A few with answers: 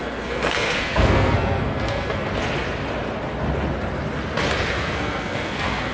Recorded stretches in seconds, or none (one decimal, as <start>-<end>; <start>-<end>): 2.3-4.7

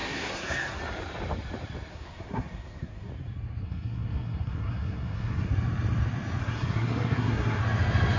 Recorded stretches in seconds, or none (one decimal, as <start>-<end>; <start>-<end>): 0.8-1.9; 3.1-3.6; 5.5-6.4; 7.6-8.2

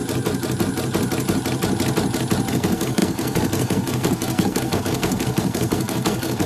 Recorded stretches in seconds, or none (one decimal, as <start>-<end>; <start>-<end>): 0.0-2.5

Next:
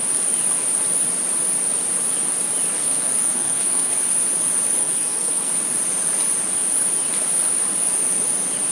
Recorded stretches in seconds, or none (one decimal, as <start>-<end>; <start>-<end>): 0.0-2.8; 3.9-4.8; 5.5-8.7

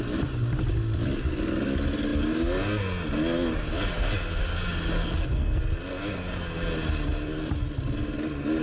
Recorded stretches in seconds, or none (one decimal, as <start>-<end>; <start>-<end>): 0.0-5.0; 5.6-8.6

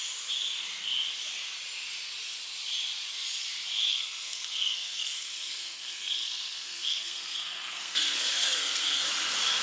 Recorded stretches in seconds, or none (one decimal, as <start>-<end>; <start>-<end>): 0.0-3.9; 9.0-9.6

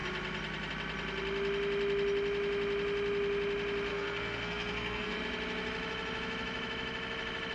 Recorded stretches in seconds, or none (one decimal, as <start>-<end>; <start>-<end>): 0.0-3.9; 5.2-7.5